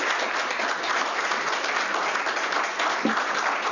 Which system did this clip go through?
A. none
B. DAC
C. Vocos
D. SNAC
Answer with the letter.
A